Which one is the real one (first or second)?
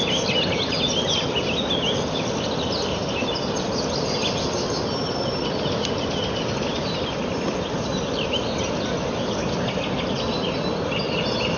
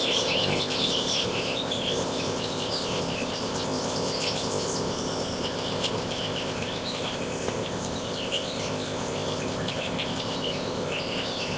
first